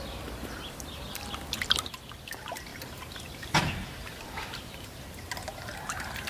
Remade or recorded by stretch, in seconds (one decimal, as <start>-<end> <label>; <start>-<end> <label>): 0.0-4.0 recorded; 4.0-5.0 remade; 5.0-5.4 recorded; 5.4-6.3 remade